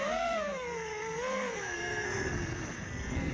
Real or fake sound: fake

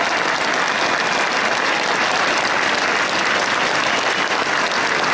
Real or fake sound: real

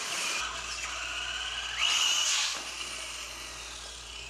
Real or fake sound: real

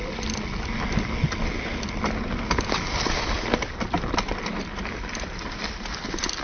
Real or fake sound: real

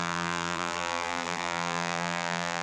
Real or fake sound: fake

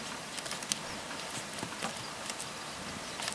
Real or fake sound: real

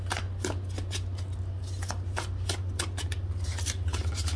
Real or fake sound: real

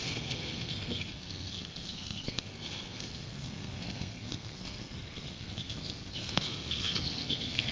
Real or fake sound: fake